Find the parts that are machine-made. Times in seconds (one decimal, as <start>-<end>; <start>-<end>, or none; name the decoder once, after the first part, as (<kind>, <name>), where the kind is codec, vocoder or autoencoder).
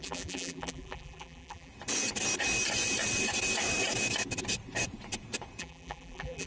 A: 0.0-1.7 (vocoder, BigVGAN v2); 5.6-6.5